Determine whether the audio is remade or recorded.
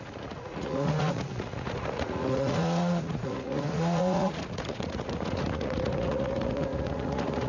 remade